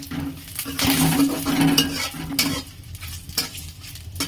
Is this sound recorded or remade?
recorded